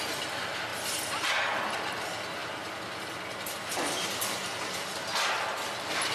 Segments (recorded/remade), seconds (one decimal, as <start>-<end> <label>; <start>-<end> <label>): 0.0-6.1 recorded